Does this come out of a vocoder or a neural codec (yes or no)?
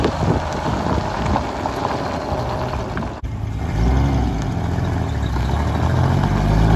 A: no